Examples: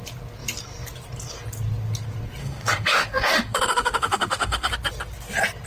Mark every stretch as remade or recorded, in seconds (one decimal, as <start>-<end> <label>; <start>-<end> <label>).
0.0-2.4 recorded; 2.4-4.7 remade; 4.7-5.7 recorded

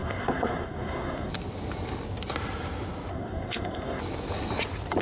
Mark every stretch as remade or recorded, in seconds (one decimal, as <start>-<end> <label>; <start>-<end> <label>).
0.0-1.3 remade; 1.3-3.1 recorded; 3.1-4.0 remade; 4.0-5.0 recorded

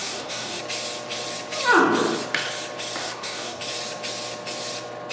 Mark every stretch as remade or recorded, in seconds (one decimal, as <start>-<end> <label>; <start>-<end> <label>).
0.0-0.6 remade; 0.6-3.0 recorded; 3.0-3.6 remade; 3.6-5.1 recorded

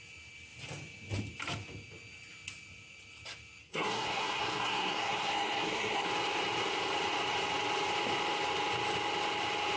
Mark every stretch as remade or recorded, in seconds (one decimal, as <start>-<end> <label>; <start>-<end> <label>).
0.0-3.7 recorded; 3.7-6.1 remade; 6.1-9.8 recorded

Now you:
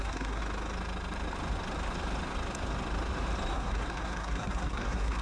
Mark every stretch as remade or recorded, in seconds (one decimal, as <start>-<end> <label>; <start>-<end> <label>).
0.0-0.4 remade; 0.4-3.5 recorded; 3.5-5.2 remade